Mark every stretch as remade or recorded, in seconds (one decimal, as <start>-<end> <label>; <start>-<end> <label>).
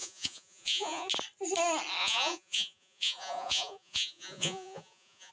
0.0-1.1 remade; 1.1-2.0 recorded; 2.0-5.3 remade